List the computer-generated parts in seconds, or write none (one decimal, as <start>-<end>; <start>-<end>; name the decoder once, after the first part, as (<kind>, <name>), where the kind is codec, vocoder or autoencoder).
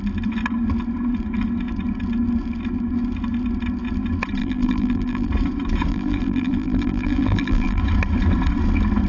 4.4-5.3 (vocoder, BigVGAN v2); 5.9-7.8